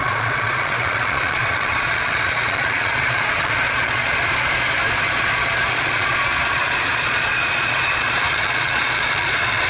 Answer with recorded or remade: remade